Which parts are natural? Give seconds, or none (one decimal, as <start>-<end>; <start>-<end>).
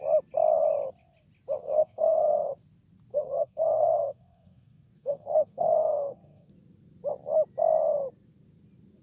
0.0-1.6; 2.5-3.1; 6.5-9.0